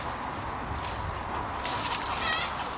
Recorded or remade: recorded